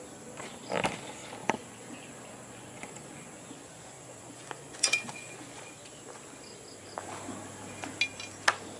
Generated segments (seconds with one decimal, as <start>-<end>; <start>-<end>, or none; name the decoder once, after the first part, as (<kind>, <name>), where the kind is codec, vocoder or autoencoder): 1.4-5.7 (vocoder, Vocos)